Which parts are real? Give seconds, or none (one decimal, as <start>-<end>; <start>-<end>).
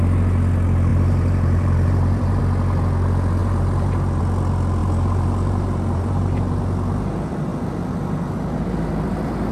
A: 0.0-0.9; 2.4-3.4; 4.2-4.8; 6.6-9.5